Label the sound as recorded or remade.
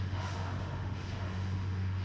remade